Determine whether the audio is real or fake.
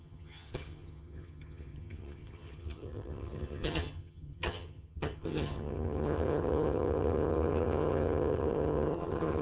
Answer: fake